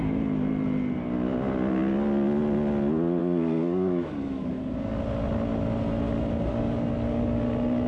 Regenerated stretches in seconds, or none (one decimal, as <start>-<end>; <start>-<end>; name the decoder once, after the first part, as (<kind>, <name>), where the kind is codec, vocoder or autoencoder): 3.2-5.0 (codec, DAC); 6.5-7.4